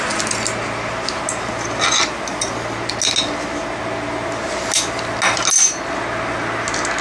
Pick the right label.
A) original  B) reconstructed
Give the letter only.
A